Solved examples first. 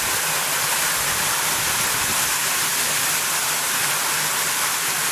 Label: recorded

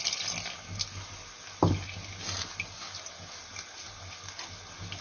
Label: recorded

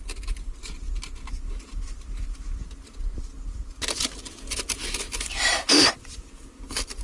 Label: recorded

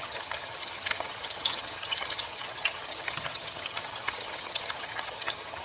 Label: remade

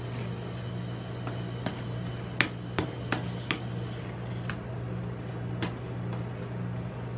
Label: recorded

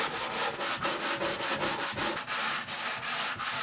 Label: recorded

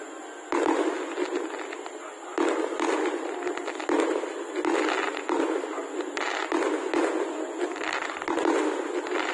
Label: recorded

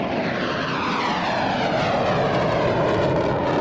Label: recorded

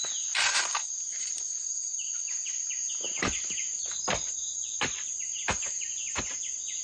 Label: recorded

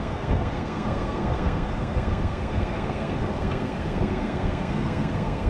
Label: remade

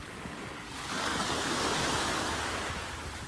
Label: remade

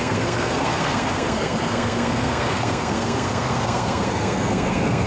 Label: remade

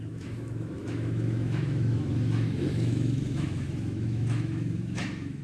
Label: remade